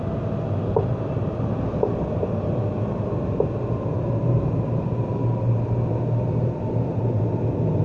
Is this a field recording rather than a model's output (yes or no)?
yes